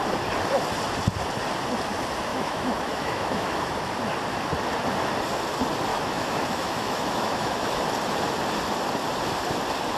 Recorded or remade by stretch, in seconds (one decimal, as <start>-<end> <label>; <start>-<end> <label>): 0.0-2.3 recorded; 2.3-3.7 remade; 3.7-5.9 recorded; 5.9-7.8 remade; 7.8-10.0 recorded